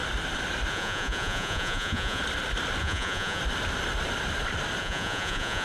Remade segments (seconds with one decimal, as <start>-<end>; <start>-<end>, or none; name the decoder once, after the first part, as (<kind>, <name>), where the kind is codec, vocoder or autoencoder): 0.7-2.2 (vocoder, Vocos); 2.8-3.4; 4.8-5.6